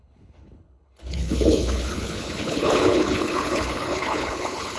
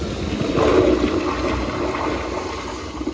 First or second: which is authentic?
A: second